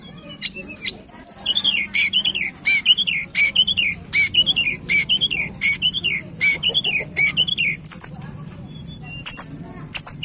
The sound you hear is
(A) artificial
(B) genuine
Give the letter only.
A